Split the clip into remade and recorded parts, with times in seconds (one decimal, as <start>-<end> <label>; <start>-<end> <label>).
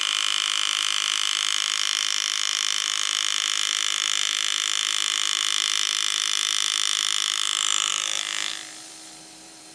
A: 0.0-4.2 remade; 4.2-4.8 recorded; 4.8-9.7 remade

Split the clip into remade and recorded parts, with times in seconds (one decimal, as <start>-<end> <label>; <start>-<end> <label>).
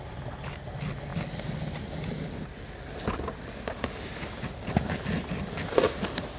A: 0.0-6.4 recorded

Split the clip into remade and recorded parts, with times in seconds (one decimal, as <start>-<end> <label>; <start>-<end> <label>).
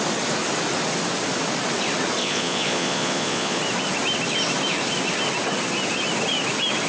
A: 0.0-2.2 recorded; 2.2-3.6 remade; 3.6-6.9 recorded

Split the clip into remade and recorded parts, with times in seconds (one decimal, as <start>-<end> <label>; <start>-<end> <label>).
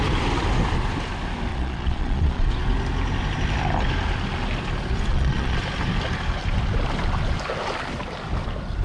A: 0.0-1.5 recorded; 1.5-2.5 remade; 2.5-5.1 recorded; 5.1-5.6 remade; 5.6-8.8 recorded